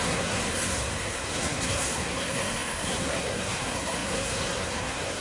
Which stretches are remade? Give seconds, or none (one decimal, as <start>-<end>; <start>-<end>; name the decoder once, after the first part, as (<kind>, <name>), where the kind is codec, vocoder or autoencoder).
0.0-5.2 (codec, SNAC)